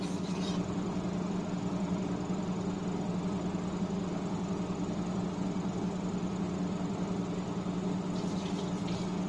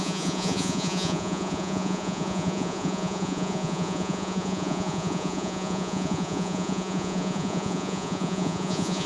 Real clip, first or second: first